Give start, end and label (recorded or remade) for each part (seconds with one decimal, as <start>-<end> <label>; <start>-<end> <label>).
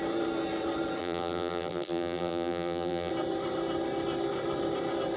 0.0-1.0 recorded; 1.0-3.1 remade; 3.1-5.2 recorded